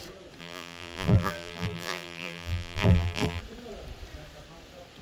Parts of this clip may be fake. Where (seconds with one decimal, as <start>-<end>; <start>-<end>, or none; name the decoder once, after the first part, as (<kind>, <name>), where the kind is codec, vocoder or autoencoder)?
0.4-3.4 (vocoder, BigVGAN v2)